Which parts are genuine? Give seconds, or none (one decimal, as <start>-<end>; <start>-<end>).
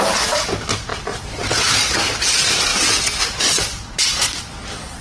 0.0-0.9; 1.7-5.0